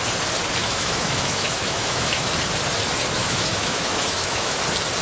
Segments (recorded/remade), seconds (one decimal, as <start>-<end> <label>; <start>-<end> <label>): 0.0-0.6 recorded; 0.6-2.3 remade; 2.3-3.2 recorded; 3.2-4.6 remade; 4.6-5.0 recorded